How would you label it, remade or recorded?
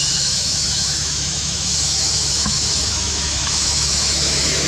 remade